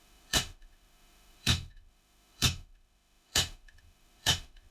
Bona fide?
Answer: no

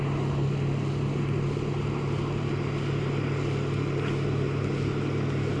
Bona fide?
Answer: yes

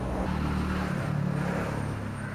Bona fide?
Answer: yes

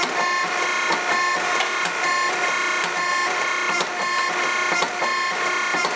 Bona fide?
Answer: yes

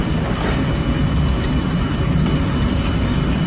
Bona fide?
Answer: yes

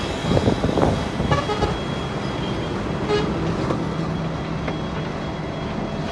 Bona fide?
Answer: yes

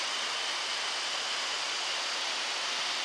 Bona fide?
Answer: yes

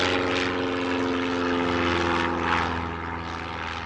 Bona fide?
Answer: yes